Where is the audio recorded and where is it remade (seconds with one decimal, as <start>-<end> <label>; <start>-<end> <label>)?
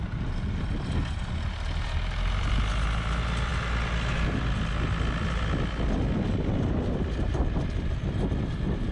0.0-8.9 recorded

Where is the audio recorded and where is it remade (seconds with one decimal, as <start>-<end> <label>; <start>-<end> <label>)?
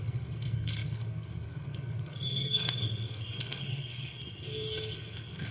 0.0-5.5 remade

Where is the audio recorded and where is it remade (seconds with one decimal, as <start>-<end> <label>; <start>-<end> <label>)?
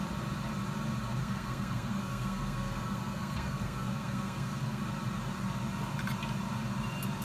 0.0-1.2 recorded; 1.2-4.8 remade; 4.8-7.2 recorded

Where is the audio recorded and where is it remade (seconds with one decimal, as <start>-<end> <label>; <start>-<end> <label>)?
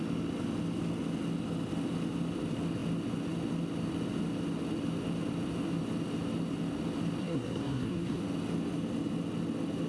0.0-7.2 recorded; 7.2-8.2 remade; 8.2-9.9 recorded